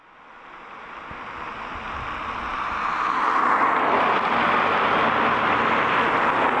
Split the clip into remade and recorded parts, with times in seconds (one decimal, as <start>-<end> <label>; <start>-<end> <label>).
0.0-6.6 recorded